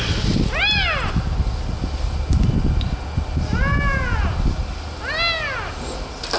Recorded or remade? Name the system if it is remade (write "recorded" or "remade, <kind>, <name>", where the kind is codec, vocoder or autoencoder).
recorded